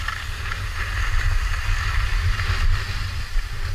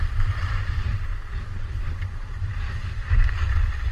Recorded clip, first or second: first